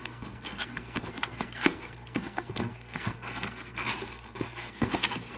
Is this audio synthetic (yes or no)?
yes